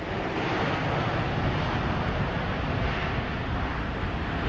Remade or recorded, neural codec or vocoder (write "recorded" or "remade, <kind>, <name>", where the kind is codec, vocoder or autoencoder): recorded